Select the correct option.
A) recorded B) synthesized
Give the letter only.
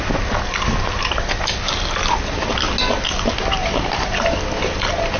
A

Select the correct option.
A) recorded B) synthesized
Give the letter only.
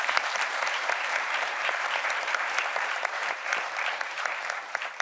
B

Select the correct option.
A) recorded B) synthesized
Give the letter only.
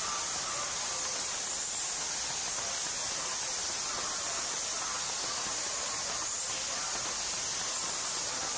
A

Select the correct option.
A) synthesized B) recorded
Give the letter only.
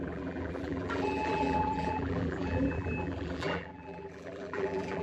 A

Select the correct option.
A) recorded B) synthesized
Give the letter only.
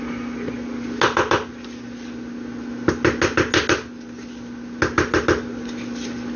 A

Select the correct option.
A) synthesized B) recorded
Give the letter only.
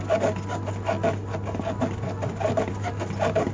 B